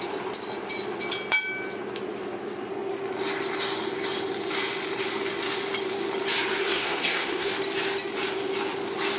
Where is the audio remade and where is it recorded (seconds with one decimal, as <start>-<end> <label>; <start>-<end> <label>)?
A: 0.0-6.6 recorded; 6.6-7.5 remade; 7.5-9.2 recorded